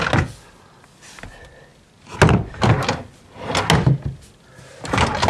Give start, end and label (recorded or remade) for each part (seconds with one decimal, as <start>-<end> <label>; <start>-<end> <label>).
0.0-5.3 recorded